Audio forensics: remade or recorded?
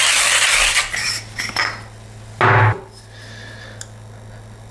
recorded